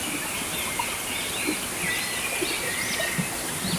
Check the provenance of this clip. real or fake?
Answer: real